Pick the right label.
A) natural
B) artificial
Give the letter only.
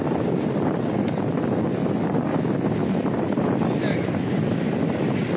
A